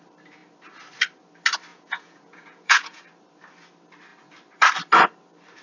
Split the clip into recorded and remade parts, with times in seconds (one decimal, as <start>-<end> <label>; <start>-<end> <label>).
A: 0.0-1.7 recorded; 1.7-3.0 remade; 3.0-5.6 recorded